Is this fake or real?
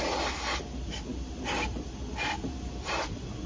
real